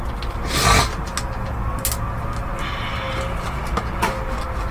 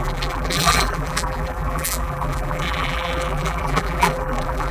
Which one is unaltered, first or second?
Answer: first